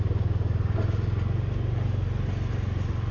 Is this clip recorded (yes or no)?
yes